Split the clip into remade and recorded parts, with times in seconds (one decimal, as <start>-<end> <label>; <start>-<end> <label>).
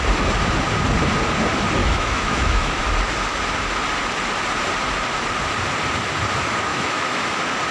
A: 0.0-1.8 recorded; 1.8-2.8 remade; 2.8-6.7 recorded; 6.7-7.3 remade; 7.3-7.7 recorded